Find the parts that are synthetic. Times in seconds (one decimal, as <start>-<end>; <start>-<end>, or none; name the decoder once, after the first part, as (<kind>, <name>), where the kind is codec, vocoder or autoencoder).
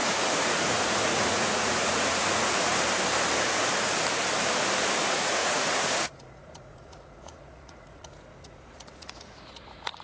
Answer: 0.0-2.7 (vocoder, Vocos); 5.0-10.0